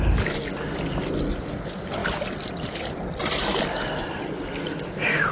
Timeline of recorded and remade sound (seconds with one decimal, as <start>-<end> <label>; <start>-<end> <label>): 0.0-5.3 recorded